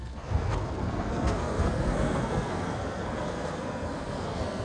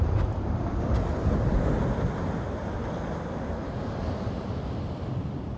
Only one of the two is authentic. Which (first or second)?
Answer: second